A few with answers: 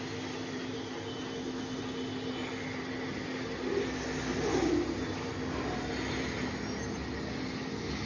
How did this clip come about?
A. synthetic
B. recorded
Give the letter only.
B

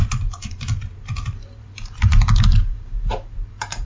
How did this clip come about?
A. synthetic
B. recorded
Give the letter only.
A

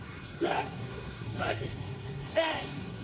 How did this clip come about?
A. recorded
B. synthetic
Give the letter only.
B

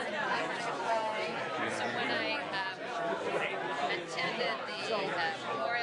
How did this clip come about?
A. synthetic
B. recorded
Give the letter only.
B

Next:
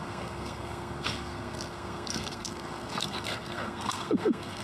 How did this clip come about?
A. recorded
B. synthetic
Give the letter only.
B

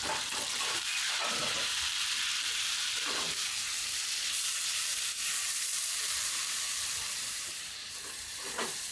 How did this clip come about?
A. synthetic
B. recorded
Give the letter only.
A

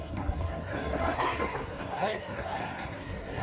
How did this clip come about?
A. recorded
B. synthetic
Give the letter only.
B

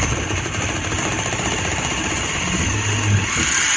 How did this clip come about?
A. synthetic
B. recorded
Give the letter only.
A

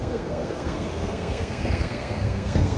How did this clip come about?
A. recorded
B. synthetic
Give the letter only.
B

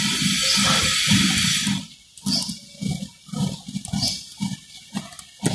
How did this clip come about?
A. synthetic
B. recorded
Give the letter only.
B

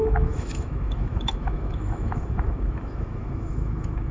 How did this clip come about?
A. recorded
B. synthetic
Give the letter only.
B